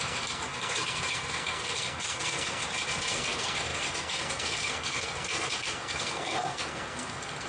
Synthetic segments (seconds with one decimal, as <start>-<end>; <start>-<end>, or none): 0.0-2.6; 3.1-7.5